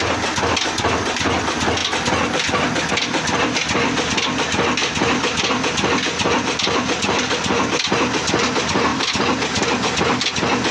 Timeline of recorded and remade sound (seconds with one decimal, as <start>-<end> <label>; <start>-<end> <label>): 0.0-4.8 recorded; 4.8-5.5 remade; 5.5-8.9 recorded; 8.9-10.0 remade; 10.0-10.7 recorded